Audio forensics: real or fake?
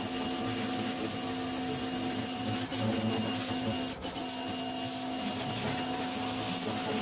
real